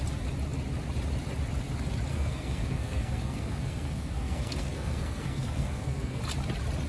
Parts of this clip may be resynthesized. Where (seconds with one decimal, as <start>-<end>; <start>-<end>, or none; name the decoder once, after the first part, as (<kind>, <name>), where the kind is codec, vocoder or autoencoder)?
2.1-6.2 (codec, SNAC)